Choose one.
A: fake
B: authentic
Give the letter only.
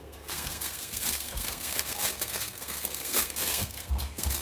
A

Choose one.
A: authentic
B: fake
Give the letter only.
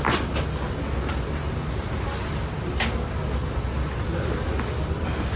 A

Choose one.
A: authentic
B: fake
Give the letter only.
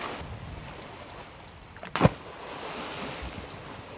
A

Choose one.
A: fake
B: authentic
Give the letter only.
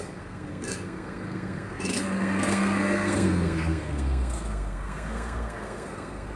A